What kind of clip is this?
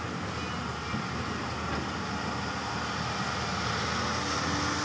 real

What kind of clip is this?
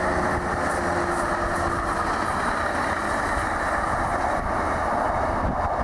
real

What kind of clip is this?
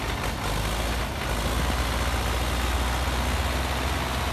real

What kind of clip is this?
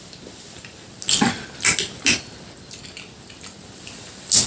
real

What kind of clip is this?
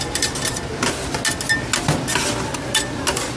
real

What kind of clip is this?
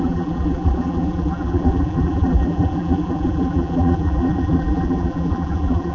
fake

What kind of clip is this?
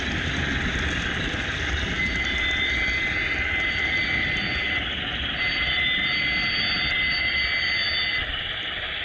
real